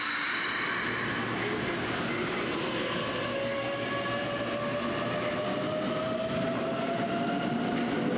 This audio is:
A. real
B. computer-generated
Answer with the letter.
A